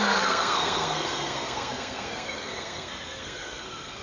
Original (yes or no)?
no